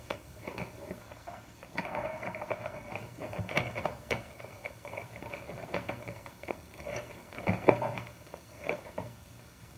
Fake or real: fake